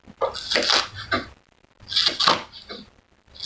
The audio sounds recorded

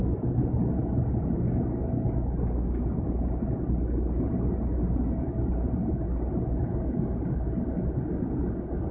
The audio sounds recorded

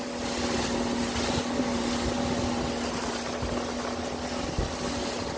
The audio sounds recorded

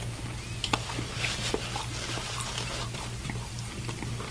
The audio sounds recorded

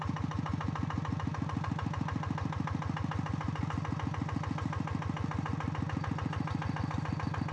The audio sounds recorded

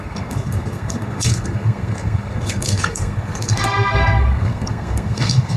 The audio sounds remade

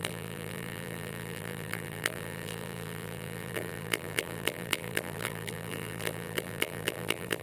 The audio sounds remade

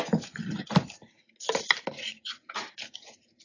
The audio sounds recorded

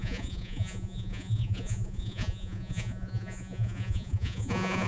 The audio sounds remade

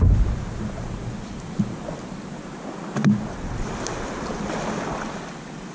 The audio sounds recorded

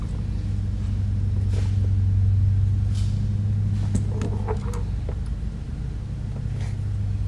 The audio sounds recorded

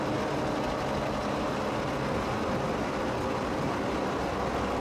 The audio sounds recorded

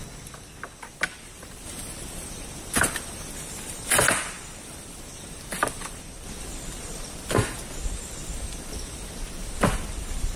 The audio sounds recorded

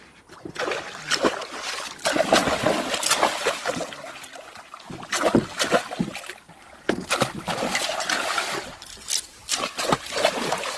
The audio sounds recorded